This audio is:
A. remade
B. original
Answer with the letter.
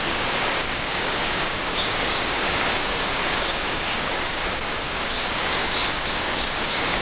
A